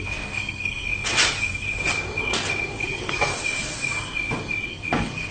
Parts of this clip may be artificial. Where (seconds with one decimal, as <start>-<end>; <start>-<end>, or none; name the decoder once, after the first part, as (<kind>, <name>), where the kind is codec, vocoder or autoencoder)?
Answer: 0.0-0.9 (codec, SNAC); 2.8-3.3; 4.7-5.3